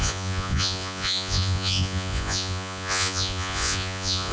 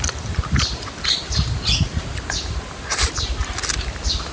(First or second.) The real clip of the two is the second